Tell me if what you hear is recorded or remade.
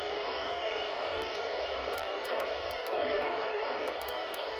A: remade